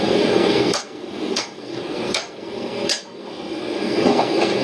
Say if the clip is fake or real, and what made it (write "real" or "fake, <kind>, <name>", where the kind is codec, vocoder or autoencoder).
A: fake, codec, SNAC